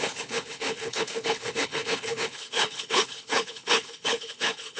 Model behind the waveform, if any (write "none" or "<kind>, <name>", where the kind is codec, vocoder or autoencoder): codec, HILCodec